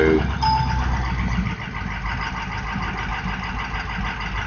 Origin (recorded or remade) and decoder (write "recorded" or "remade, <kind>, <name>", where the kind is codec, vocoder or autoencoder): recorded